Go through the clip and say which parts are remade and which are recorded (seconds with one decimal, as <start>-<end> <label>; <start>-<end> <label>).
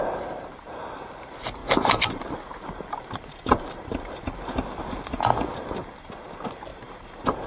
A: 0.0-1.6 recorded; 1.6-2.3 remade; 2.3-6.7 recorded; 6.7-7.5 remade